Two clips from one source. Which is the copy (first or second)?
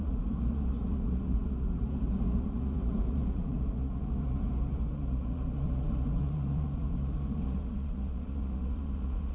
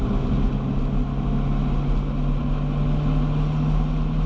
first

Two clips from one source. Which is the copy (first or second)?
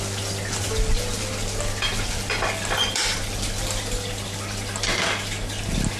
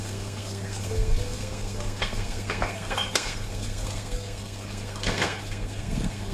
second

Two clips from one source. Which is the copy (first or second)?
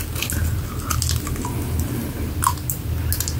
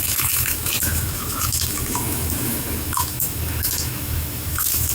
second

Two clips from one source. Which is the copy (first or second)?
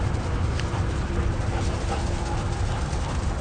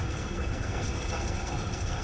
second